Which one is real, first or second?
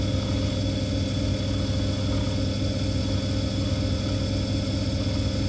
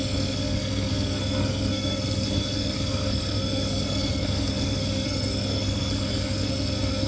first